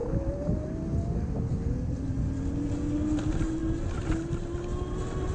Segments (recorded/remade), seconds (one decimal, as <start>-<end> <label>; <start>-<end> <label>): 0.0-5.3 recorded

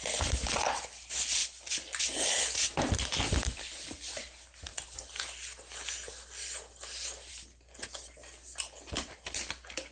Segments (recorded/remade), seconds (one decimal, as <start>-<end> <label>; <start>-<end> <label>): 0.0-9.9 recorded

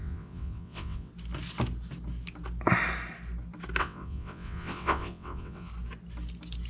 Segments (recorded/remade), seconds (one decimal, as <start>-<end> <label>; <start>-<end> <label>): 0.0-1.1 remade; 1.1-3.8 recorded; 3.8-5.7 remade; 5.7-6.7 recorded

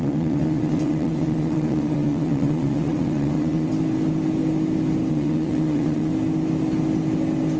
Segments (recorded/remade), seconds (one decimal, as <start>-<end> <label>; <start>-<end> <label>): 0.0-3.7 remade; 3.7-5.1 recorded; 5.1-6.1 remade; 6.1-7.6 recorded

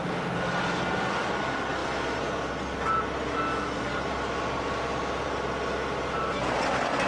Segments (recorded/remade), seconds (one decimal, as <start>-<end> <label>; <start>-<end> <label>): 0.0-7.1 recorded

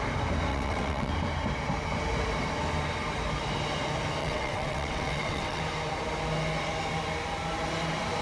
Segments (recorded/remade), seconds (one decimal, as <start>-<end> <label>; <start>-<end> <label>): 0.0-0.5 recorded; 0.5-1.1 remade; 1.1-4.2 recorded; 4.2-5.6 remade; 5.6-8.2 recorded